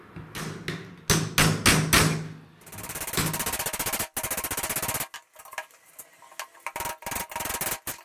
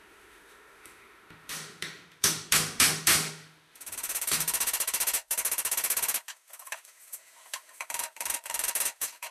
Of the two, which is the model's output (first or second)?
second